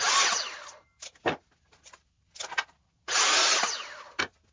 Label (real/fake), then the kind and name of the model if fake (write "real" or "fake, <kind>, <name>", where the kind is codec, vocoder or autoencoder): real